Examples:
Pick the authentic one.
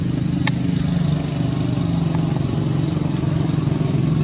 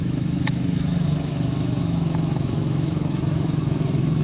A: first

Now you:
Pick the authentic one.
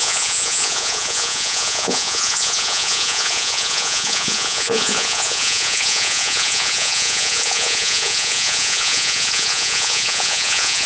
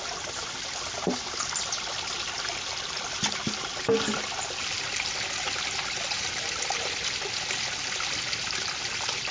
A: second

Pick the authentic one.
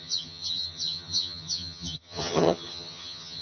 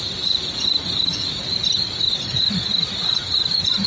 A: second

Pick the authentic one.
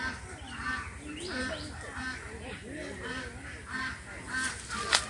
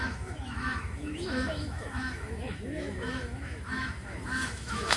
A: first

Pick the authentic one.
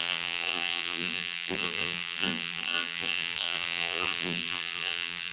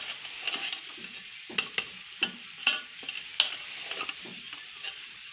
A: second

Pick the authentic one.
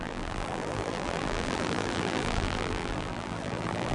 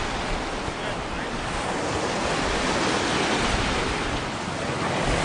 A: second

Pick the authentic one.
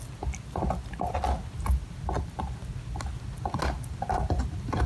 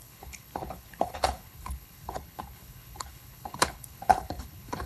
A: first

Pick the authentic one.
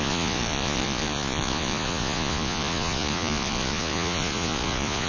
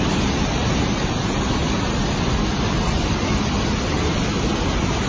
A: second